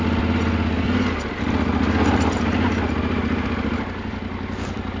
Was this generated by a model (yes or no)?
no